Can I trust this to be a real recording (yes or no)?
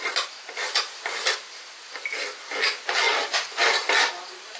yes